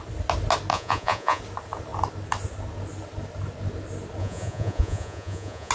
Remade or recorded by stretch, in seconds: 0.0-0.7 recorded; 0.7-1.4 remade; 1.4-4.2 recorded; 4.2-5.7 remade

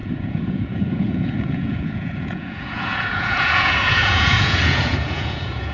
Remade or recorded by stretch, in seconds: 0.0-5.7 remade

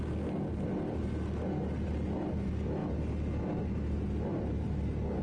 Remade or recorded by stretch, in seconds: 0.0-5.2 recorded